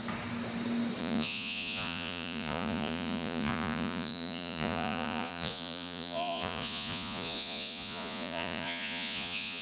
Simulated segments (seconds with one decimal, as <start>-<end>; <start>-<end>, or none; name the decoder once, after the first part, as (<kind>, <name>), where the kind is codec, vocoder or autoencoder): 1.0-9.6 (vocoder, Vocos)